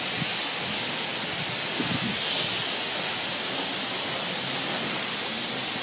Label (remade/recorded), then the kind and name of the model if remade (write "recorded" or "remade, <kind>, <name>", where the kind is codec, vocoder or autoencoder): recorded